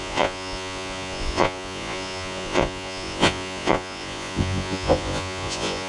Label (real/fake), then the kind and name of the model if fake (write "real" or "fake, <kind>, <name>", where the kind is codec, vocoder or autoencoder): fake, vocoder, Vocos